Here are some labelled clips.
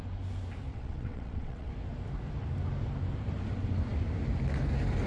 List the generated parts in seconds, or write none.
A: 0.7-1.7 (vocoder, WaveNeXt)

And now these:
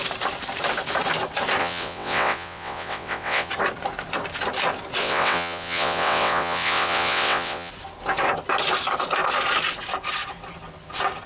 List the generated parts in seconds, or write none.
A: 1.6-3.5 (vocoder, WaveNeXt); 5.0-7.7

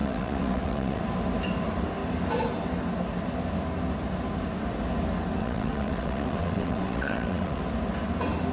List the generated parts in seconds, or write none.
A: 0.0-1.0 (vocoder, WaveNeXt); 5.4-7.6